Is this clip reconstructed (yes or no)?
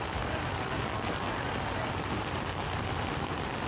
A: no